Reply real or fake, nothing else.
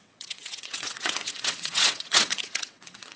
fake